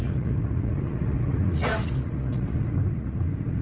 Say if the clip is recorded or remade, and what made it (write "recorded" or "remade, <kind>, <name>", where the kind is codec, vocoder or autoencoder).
remade, vocoder, Vocos